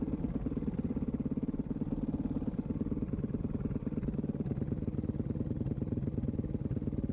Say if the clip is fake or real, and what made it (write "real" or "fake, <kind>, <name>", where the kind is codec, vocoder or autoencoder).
real